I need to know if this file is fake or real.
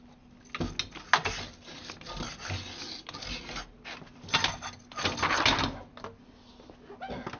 real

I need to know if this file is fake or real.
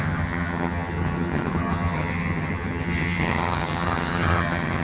fake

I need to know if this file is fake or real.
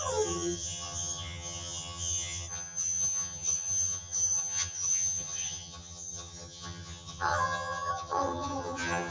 fake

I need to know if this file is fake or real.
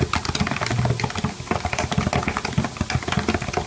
real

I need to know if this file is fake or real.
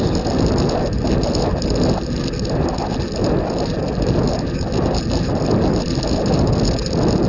real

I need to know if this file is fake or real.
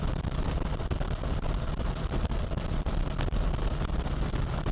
real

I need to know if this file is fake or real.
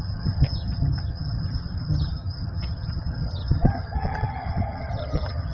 fake